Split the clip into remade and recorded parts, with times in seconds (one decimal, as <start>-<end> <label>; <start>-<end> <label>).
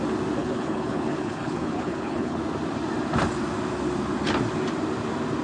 0.0-0.4 recorded; 0.4-2.4 remade; 2.4-5.4 recorded